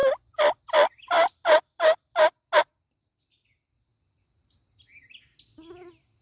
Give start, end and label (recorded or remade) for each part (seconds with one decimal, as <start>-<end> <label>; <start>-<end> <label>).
0.0-6.2 recorded